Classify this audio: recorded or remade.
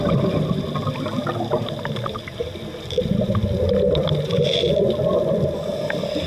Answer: recorded